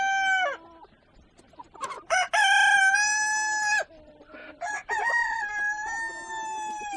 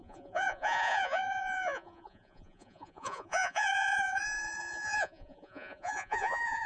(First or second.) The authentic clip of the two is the first